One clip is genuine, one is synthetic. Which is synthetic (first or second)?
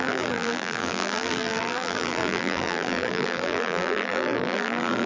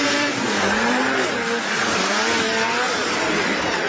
first